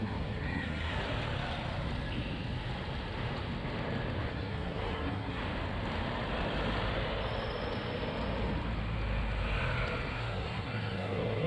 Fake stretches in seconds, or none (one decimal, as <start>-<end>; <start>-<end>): 0.0-1.0; 4.3-5.4; 10.1-11.5